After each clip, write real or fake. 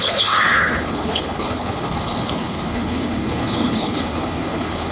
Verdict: fake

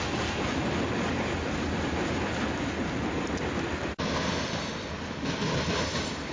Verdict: real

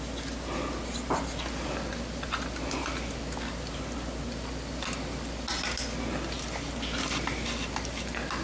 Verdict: real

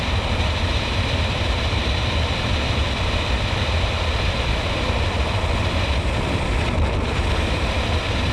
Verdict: real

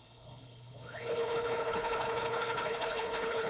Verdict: fake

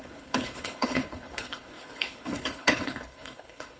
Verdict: fake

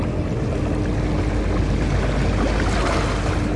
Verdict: real